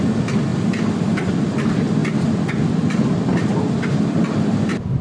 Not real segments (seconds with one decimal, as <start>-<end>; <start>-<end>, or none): 3.3-4.2